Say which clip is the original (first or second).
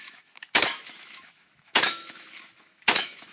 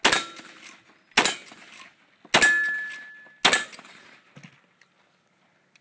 second